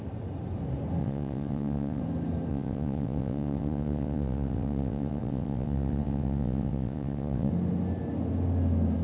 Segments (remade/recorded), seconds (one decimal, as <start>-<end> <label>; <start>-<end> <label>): 0.0-1.0 recorded; 1.0-2.0 remade; 2.0-2.5 recorded; 2.5-7.5 remade; 7.5-9.0 recorded